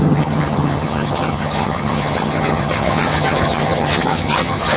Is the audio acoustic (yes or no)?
no